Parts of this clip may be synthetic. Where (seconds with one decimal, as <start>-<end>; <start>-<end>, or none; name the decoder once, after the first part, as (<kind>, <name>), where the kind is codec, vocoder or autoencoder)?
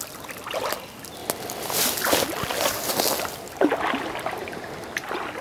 none